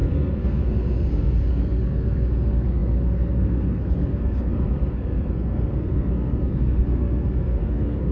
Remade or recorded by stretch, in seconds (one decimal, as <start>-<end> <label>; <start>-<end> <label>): 0.0-8.1 remade